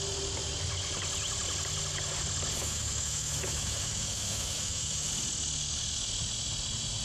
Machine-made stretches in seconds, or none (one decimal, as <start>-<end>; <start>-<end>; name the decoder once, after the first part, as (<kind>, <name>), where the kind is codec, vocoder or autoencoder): 2.6-5.1 (autoencoder, DAC-VAE)